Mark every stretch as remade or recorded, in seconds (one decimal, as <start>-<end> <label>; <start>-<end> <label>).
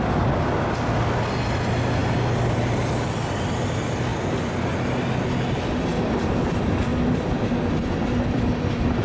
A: 0.0-2.0 recorded; 2.0-3.2 remade; 3.2-6.9 recorded; 6.9-8.0 remade; 8.0-9.0 recorded